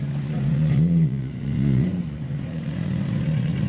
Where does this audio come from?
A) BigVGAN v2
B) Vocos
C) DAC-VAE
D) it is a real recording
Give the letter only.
B